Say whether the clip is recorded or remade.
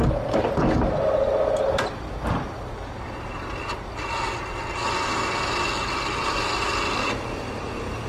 recorded